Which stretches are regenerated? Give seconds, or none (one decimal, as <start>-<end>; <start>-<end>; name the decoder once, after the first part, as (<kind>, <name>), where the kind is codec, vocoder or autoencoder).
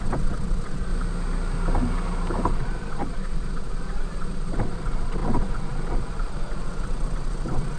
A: 0.0-0.9 (vocoder, Vocos); 2.5-7.8